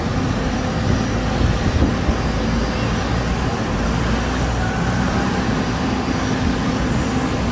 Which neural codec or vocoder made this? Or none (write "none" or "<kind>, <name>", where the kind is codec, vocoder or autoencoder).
none